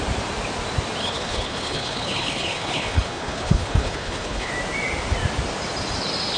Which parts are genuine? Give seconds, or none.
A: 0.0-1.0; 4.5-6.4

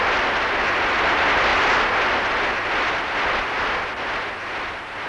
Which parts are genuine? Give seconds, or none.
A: 0.0-5.1

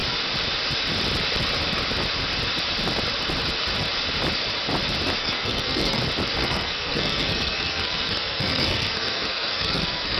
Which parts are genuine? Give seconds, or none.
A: 0.0-5.2; 6.0-6.4

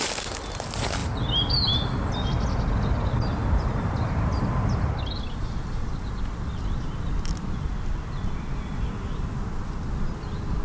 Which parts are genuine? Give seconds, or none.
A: 0.0-3.4; 6.5-10.6

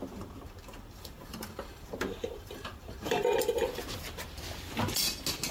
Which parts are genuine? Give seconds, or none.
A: 0.0-1.3; 3.7-5.5

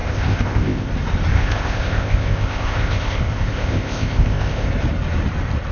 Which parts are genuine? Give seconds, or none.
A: 0.9-1.3; 4.7-5.7

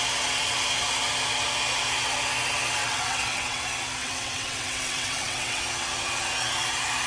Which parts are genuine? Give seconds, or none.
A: 0.0-2.8; 3.6-4.0; 5.6-7.1

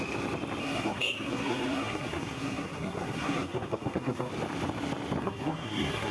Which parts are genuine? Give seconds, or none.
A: 0.0-0.6; 4.3-5.2